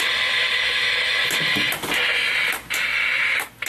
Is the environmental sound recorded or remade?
recorded